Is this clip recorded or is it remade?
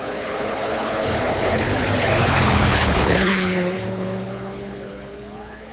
remade